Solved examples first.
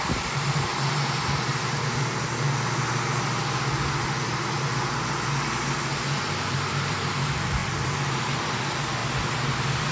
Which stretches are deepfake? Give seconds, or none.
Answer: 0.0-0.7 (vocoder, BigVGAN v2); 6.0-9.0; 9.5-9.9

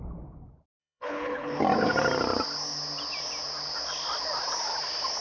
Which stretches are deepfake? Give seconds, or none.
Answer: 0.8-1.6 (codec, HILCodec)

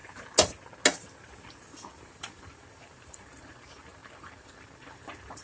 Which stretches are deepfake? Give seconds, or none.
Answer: 2.0-5.4 (vocoder, BigVGAN v2)

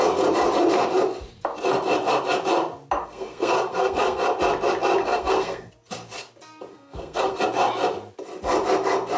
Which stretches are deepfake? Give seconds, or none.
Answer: 3.0-4.2 (codec, SNAC); 5.0-5.7; 6.7-7.4

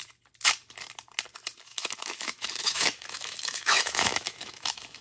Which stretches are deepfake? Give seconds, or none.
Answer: 1.7-5.0 (autoencoder, DAC-VAE)

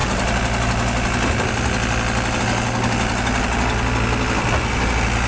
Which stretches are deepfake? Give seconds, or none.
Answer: none

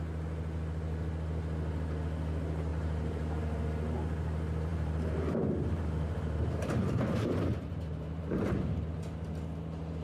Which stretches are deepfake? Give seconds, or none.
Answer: 2.7-3.6 (vocoder, BigVGAN v2); 4.7-8.8

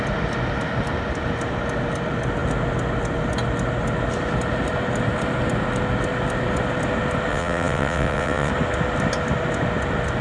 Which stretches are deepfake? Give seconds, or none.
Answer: 7.3-8.5 (vocoder, WaveNeXt)